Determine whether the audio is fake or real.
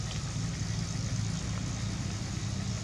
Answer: real